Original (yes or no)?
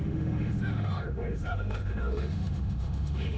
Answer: no